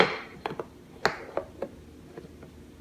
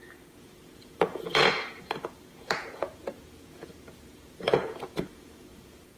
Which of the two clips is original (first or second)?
first